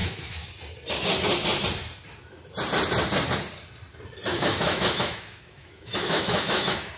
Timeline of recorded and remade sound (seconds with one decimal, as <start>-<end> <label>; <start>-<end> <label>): 0.0-0.5 remade; 0.5-4.3 recorded; 4.3-7.0 remade